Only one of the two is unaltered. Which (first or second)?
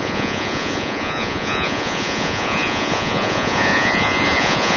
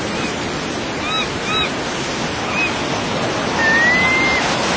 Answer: second